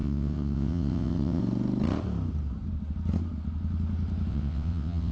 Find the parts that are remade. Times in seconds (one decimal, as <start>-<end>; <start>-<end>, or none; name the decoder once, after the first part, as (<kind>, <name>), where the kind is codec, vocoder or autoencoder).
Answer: 0.0-1.4 (vocoder, WaveNeXt); 4.3-5.1